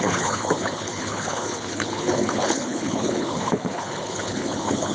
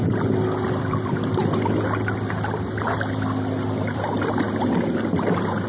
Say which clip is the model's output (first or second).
first